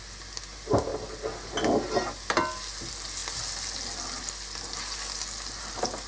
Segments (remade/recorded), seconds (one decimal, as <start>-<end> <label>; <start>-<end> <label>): 0.0-6.1 recorded